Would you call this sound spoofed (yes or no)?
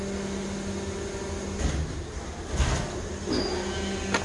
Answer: no